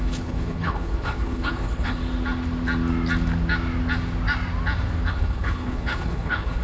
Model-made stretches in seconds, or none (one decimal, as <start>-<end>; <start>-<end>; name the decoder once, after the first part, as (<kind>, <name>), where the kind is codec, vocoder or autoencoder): 0.0-2.0 (codec, HILCodec); 5.1-6.6

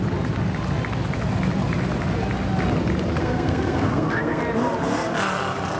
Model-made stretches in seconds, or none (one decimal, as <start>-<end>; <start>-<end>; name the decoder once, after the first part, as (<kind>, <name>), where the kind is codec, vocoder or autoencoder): 3.2-4.4 (codec, SNAC)

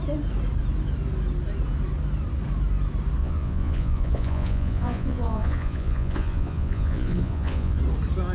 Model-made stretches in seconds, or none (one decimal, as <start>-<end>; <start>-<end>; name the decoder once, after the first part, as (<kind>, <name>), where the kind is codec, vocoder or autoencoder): 3.2-7.8 (vocoder, Vocos)

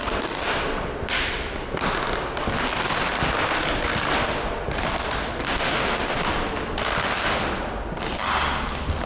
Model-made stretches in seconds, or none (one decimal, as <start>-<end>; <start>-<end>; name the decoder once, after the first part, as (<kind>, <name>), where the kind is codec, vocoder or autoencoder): 5.5-6.2 (autoencoder, DAC-VAE)

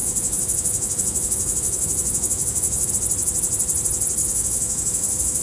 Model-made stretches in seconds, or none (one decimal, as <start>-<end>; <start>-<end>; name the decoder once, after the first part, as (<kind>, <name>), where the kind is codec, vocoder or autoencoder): 0.0-2.9 (autoencoder, DAC-VAE); 4.2-5.4

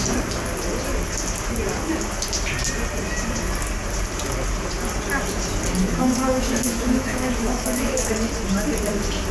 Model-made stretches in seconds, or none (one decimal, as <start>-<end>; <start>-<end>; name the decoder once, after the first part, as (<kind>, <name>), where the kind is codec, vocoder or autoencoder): 5.8-8.1 (autoencoder, DAC-VAE)

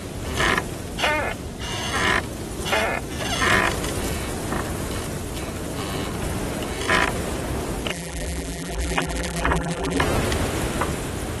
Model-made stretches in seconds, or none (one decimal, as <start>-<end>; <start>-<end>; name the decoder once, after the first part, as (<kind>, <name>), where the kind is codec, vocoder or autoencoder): 7.9-10.0 (vocoder, BigVGAN v2)